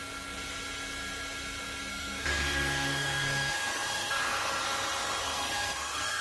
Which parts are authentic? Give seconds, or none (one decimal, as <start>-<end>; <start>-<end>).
0.0-1.9; 4.5-5.2